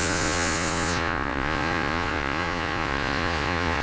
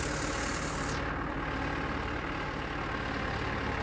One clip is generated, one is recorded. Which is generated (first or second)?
first